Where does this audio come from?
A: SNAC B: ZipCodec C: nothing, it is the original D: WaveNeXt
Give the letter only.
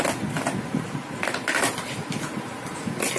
C